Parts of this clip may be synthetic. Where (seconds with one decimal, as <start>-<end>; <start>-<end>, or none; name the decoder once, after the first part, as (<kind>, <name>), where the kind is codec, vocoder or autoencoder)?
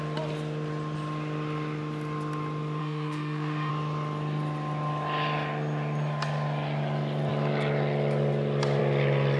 2.8-3.7 (autoencoder, DAC-VAE)